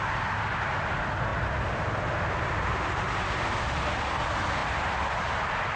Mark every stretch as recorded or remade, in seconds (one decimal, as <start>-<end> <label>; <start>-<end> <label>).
0.0-1.3 recorded; 1.3-3.8 remade; 3.8-4.6 recorded; 4.6-5.8 remade